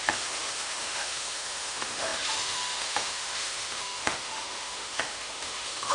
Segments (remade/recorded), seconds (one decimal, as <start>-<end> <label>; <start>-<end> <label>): 0.0-5.9 remade